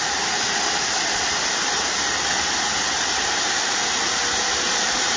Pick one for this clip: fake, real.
fake